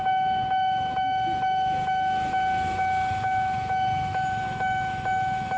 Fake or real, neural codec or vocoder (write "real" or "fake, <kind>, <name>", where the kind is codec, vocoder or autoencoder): fake, autoencoder, DAC-VAE